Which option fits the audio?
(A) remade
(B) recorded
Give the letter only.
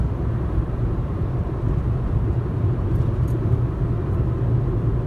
B